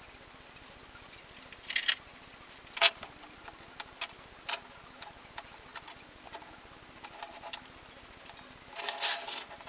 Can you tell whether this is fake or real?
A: real